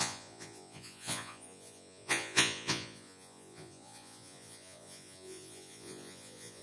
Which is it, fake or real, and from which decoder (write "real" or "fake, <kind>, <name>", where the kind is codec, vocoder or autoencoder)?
fake, vocoder, Vocos